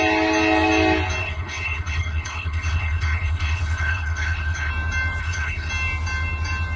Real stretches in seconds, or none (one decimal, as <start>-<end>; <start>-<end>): 0.0-1.2; 4.7-5.2; 5.7-6.8